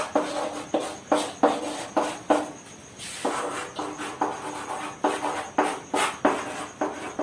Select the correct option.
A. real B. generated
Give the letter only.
A